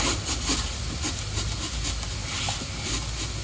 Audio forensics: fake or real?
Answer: real